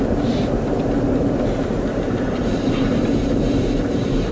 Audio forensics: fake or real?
fake